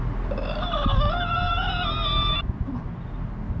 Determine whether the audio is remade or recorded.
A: recorded